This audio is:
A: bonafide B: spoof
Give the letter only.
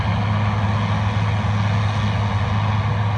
A